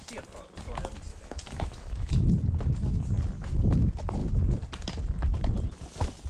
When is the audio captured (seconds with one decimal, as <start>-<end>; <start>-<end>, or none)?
0.0-1.1; 2.1-6.3